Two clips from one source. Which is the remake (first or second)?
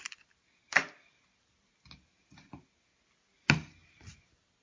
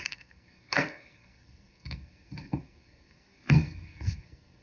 second